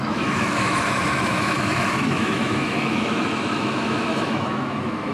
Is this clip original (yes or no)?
no